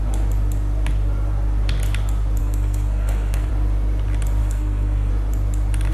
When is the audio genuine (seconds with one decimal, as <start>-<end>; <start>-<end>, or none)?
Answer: 0.0-2.4; 3.5-4.4; 5.1-5.9